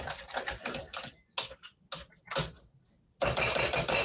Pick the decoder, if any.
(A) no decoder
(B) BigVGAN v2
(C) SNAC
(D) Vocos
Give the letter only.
A